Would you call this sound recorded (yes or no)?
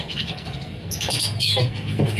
no